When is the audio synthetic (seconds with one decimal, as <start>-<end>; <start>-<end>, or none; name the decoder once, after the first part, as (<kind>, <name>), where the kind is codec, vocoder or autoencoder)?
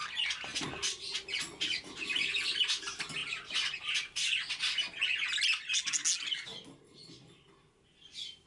none